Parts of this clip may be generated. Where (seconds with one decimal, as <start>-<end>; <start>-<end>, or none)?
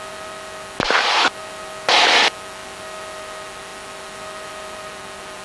none